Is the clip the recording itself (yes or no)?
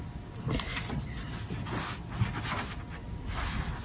yes